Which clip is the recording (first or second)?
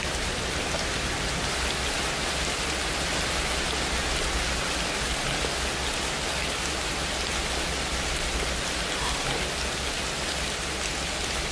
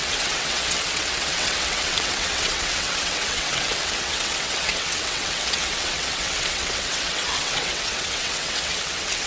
first